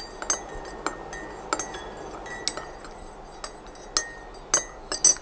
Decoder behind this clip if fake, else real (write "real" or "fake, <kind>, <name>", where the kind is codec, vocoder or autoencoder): real